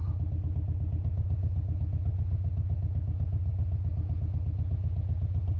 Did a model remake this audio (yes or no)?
no